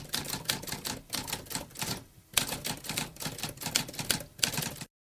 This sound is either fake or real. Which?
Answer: fake